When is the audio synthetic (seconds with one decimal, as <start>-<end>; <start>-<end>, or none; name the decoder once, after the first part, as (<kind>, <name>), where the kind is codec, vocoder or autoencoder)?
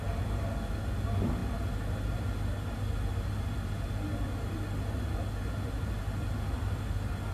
none